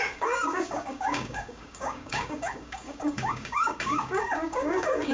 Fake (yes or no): yes